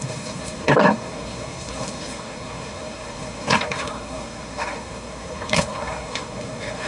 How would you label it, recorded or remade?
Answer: remade